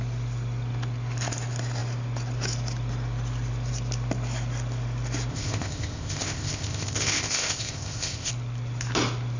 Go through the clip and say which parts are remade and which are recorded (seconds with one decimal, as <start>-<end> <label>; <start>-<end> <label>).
0.0-5.3 recorded; 5.3-8.3 remade; 8.3-9.4 recorded